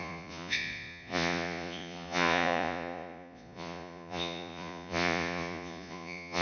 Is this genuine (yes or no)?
no